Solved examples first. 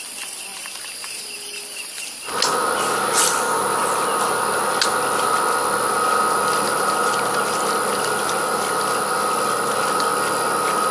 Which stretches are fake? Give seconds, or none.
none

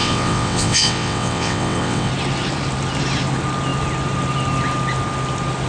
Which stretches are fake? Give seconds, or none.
0.0-2.1 (vocoder, WaveNeXt)

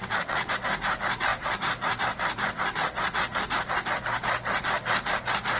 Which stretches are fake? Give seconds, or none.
0.0-0.5 (vocoder, WaveNeXt)

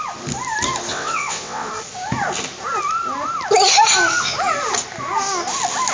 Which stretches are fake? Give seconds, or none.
0.9-1.7 (vocoder, WaveNeXt)